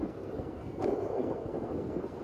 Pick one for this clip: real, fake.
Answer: fake